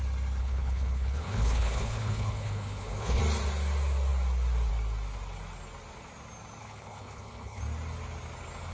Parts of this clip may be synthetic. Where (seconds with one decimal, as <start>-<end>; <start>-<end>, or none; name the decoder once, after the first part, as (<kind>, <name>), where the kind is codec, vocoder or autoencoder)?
0.4-3.2 (codec, HILCodec); 6.6-7.6